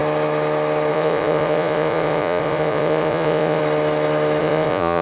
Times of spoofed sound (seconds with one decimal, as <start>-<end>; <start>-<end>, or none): 0.9-3.6; 4.4-5.0